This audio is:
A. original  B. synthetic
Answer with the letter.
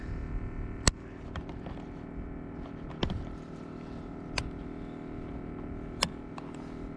A